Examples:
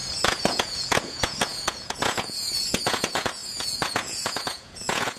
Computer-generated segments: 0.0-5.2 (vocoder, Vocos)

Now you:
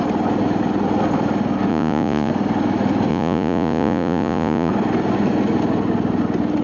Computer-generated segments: 1.7-2.3 (vocoder, Vocos); 3.1-4.7

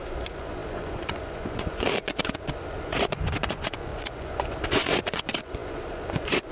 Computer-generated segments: 0.0-6.5 (vocoder, Vocos)

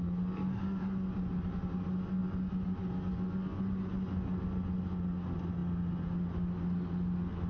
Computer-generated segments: none